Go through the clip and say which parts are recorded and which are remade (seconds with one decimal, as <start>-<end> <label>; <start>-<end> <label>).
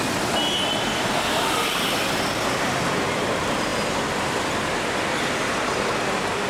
0.0-6.5 recorded